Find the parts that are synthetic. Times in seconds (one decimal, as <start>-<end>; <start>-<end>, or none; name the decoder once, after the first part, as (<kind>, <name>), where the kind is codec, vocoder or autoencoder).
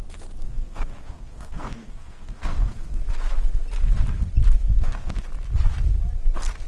0.5-3.0 (codec, SNAC); 4.7-5.2